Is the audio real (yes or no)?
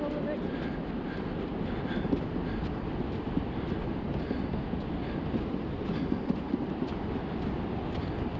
yes